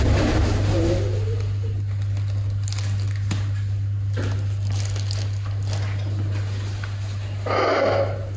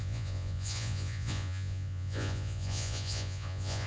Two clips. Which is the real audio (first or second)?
first